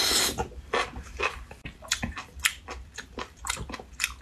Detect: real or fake fake